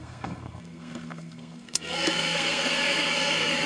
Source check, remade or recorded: remade